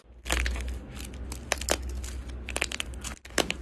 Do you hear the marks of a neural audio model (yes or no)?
no